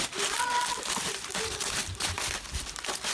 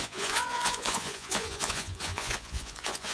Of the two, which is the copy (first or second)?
second